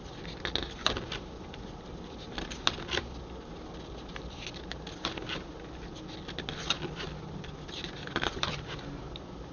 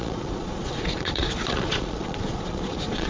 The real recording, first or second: first